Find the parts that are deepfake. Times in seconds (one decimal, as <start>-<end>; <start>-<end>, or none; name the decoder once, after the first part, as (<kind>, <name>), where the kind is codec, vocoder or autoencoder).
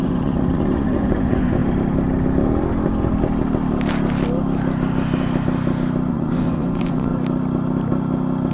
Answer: 0.0-1.6 (vocoder, Vocos); 6.1-7.1